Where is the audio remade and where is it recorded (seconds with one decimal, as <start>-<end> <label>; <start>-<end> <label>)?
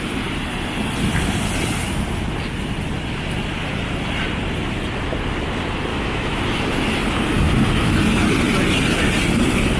0.0-5.9 recorded; 5.9-6.4 remade; 6.4-9.8 recorded